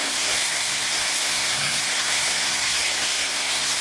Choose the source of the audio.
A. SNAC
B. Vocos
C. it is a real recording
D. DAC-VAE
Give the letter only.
A